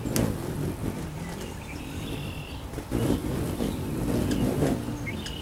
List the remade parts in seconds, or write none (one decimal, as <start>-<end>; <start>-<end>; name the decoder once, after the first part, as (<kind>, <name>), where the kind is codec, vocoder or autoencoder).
0.8-4.0 (vocoder, BigVGAN v2)